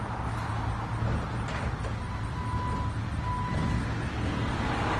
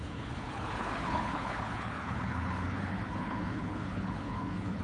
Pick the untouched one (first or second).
first